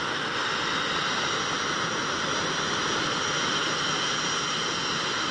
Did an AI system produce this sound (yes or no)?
no